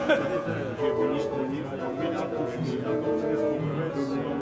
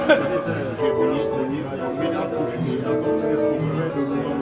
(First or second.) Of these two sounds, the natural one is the second